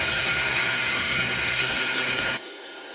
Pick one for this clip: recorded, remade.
remade